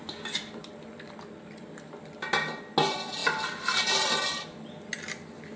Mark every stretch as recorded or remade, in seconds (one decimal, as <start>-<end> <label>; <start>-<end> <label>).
0.0-5.6 recorded